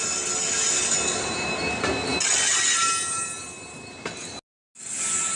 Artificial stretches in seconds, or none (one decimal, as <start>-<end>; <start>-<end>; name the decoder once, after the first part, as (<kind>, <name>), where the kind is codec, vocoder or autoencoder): none